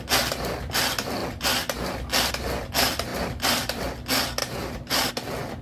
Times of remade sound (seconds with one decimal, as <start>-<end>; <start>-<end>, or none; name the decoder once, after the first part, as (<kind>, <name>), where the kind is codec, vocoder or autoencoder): 3.1-3.8 (vocoder, BigVGAN v2); 4.4-5.1